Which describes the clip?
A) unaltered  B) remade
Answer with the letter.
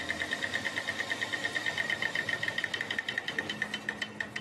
A